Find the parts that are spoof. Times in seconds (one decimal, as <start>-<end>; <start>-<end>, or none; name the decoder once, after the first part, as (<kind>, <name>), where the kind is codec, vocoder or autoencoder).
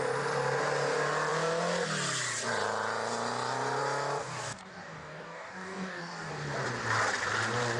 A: 4.2-6.3 (codec, DAC)